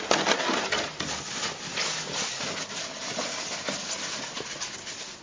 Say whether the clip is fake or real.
real